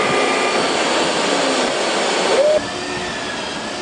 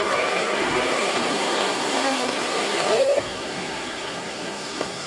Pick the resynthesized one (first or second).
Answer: second